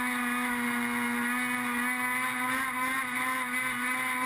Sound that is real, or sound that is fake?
real